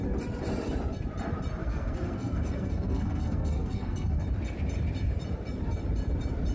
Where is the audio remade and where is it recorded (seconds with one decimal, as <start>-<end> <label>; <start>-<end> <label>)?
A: 0.0-1.6 recorded; 1.6-4.2 remade; 4.2-6.5 recorded